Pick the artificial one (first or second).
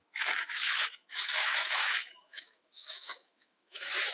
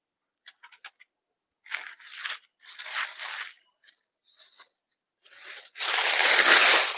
first